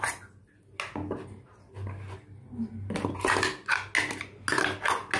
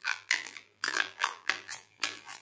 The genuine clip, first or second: first